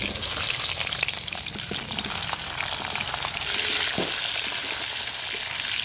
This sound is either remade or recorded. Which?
recorded